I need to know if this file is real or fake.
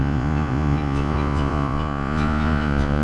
fake